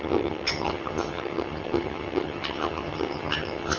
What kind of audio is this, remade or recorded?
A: remade